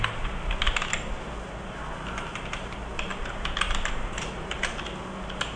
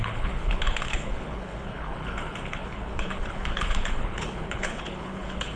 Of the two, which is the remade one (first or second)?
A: second